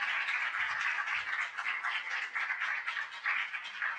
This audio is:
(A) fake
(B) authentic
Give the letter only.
B